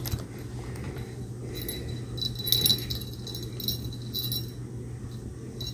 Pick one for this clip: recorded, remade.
recorded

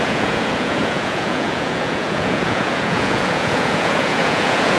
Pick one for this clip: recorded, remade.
remade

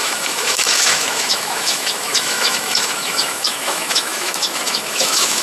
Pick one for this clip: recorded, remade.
remade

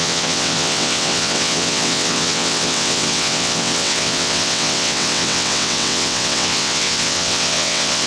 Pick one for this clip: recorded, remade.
remade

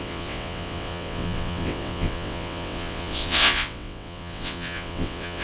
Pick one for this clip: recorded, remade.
remade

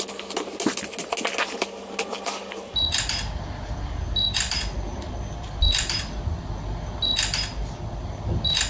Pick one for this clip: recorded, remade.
recorded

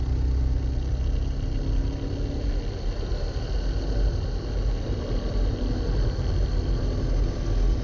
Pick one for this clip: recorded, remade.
recorded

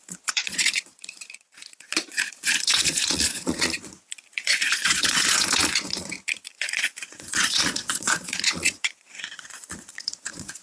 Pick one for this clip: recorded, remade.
remade